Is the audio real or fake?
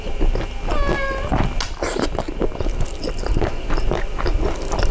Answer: real